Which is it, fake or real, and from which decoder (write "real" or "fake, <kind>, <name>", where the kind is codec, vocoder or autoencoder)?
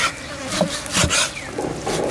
real